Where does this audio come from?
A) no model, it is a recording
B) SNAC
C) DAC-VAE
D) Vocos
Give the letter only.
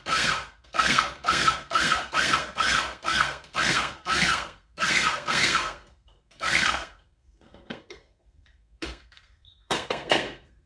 B